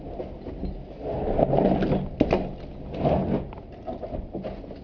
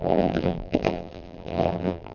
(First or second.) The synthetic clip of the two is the second